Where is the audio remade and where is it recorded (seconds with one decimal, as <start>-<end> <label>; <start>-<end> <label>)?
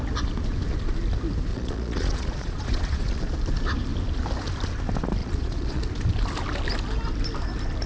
0.0-1.5 recorded; 1.5-3.3 remade; 3.3-5.2 recorded; 5.2-5.8 remade; 5.8-7.9 recorded